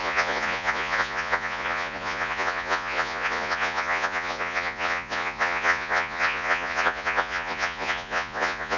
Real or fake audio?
fake